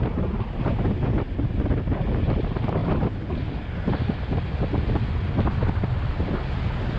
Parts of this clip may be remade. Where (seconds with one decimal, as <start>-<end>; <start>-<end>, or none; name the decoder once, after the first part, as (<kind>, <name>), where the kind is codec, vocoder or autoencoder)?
none